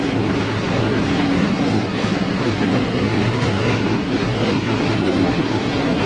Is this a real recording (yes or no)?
no